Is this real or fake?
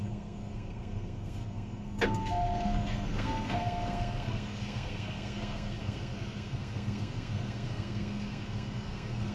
fake